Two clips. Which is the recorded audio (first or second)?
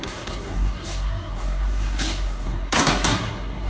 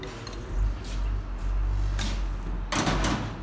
second